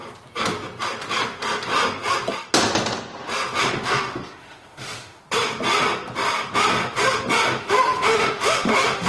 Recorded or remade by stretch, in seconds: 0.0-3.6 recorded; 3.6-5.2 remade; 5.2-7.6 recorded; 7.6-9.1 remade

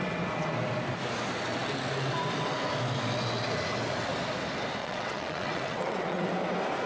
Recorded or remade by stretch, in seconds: 0.0-4.8 recorded; 4.8-6.3 remade; 6.3-6.9 recorded

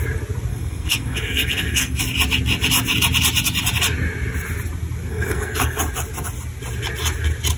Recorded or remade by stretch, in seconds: 0.0-0.5 recorded; 0.5-2.0 remade; 2.0-5.1 recorded; 5.1-5.8 remade; 5.8-7.6 recorded